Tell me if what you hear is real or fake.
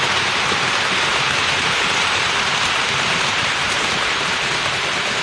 fake